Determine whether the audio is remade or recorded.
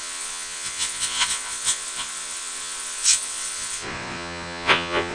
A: remade